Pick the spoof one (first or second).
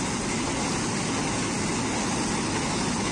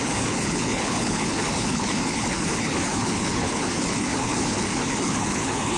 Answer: second